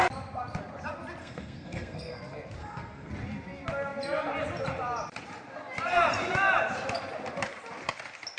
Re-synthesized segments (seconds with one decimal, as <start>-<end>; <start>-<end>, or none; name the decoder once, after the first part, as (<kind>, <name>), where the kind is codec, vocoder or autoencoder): 1.2-2.2 (codec, SNAC); 2.6-3.1